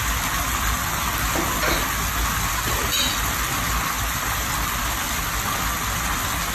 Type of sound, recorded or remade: recorded